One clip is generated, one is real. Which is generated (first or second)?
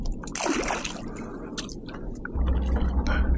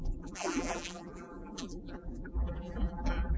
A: second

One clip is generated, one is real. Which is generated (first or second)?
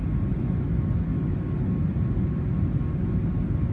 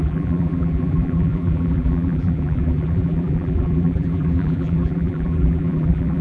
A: second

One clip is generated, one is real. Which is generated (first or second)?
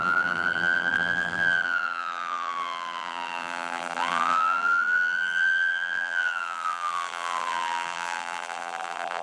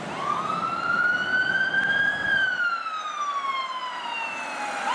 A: first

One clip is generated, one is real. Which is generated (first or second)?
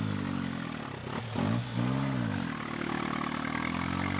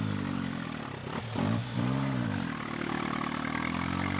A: second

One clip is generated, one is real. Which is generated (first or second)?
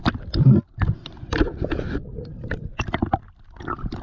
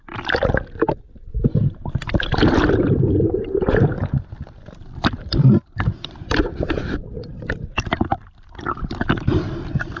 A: second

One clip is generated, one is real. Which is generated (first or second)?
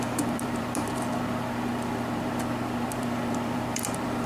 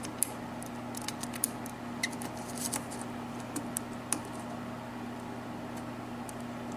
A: first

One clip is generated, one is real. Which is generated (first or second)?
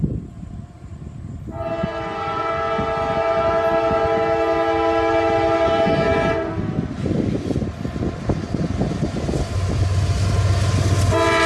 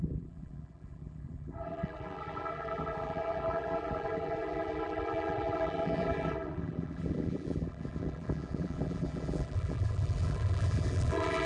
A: second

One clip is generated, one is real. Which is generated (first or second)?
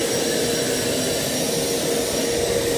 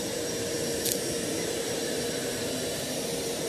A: second